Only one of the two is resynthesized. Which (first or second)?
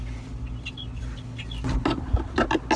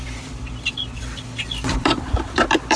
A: second